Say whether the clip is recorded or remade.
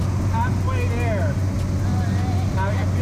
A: recorded